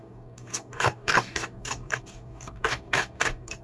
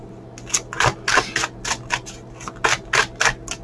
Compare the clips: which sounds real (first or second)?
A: second